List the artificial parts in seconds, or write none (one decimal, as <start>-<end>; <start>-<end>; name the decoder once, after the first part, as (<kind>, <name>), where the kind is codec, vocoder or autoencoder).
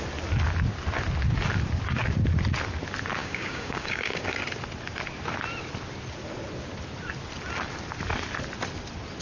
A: 3.2-4.4 (codec, DAC)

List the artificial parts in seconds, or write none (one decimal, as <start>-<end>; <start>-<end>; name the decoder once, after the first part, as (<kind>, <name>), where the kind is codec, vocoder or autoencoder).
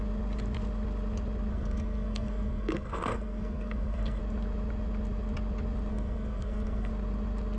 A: 1.5-4.2 (codec, SNAC); 5.9-6.9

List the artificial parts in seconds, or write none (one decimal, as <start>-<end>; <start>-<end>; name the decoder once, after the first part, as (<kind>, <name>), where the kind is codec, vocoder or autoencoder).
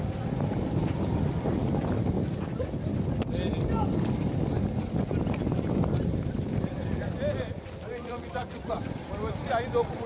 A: 8.0-8.8 (vocoder, Vocos)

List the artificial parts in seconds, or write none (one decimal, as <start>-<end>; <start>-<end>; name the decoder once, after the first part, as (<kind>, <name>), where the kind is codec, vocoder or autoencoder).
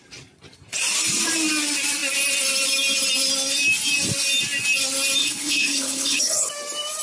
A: 5.2-6.5 (codec, HILCodec)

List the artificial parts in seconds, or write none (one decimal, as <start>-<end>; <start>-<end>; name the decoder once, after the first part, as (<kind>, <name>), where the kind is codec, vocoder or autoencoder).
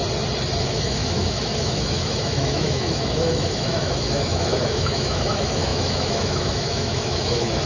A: 0.6-7.7 (autoencoder, DAC-VAE)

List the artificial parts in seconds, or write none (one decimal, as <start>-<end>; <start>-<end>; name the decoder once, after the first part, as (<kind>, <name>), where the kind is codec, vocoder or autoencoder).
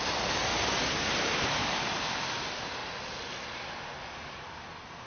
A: 0.5-2.1 (vocoder, BigVGAN v2)